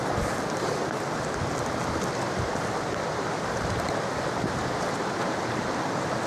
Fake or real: real